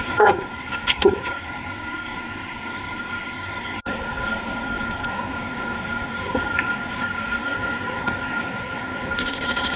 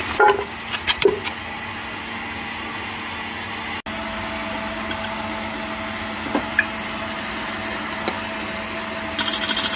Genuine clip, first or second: second